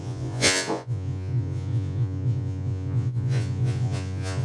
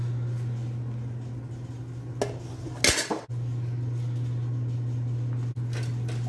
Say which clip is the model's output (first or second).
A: first